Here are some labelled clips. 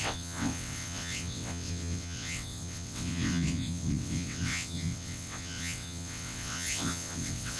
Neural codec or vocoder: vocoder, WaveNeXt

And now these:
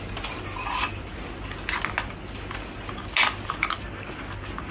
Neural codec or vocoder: none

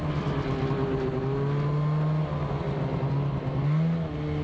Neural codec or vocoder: none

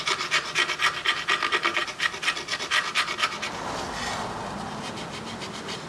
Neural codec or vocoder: none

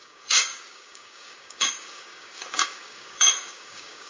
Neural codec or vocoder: codec, DAC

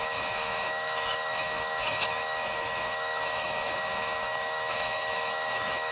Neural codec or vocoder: autoencoder, DAC-VAE